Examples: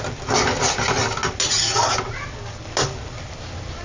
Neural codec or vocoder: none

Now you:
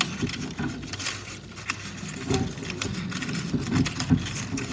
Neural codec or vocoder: none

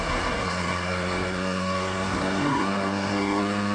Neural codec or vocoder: codec, SNAC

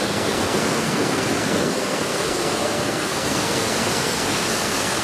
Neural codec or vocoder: codec, SNAC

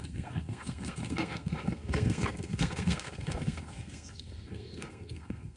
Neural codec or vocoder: codec, SNAC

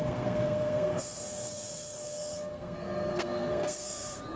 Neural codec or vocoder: codec, SNAC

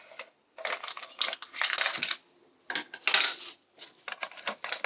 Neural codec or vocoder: none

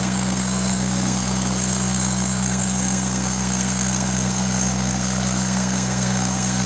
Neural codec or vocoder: codec, SNAC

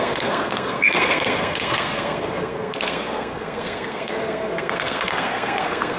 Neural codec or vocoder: codec, SNAC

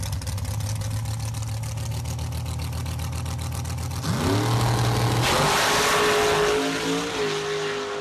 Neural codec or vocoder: none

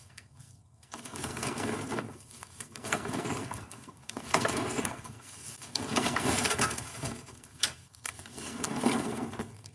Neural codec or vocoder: codec, SNAC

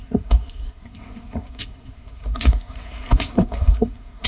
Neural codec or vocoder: codec, SNAC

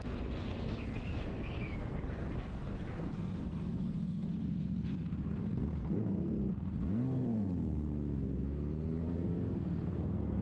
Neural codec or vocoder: codec, SNAC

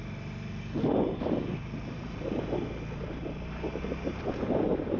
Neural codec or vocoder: none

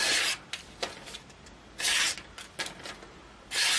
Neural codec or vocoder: none